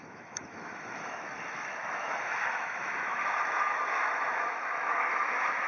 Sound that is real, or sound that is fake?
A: fake